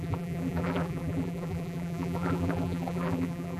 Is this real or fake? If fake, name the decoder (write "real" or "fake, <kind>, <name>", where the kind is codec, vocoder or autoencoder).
fake, vocoder, BigVGAN v2